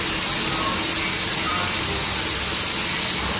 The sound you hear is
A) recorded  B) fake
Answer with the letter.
A